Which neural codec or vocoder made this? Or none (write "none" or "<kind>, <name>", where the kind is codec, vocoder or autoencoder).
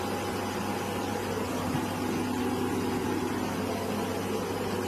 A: none